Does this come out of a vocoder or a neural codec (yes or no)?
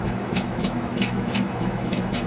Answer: yes